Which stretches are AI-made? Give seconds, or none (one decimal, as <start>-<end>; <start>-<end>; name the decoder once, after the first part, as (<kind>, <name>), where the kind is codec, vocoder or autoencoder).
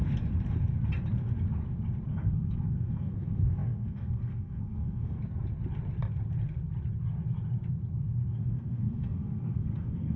2.1-5.2 (codec, SNAC); 8.4-10.2